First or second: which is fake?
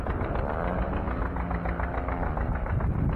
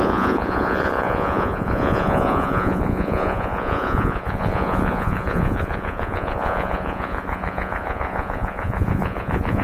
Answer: second